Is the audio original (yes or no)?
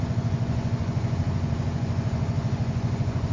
no